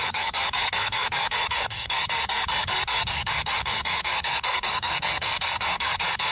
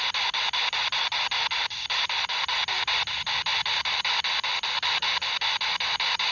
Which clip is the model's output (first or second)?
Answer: first